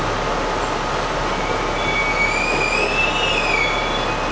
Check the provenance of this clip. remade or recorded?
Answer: recorded